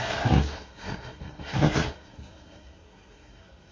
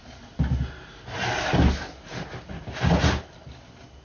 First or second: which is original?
second